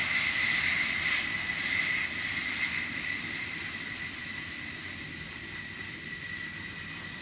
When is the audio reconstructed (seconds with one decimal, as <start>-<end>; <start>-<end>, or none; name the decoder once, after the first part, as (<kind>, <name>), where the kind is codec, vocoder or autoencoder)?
none